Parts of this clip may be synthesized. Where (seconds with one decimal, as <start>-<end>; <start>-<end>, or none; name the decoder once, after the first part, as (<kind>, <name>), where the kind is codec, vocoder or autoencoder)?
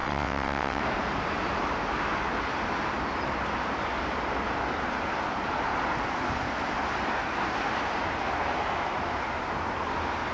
0.0-0.8 (vocoder, WaveNeXt)